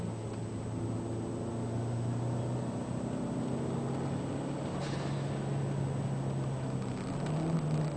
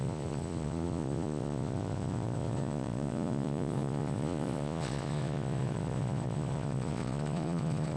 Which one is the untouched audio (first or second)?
first